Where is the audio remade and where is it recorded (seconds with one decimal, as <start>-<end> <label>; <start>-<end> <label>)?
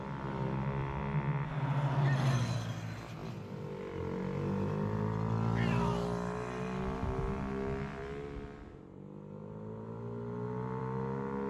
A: 0.0-11.5 recorded